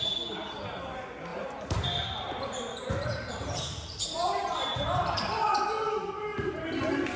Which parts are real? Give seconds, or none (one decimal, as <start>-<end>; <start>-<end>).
0.0-1.3; 5.5-6.3